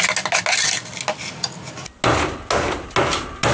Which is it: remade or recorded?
recorded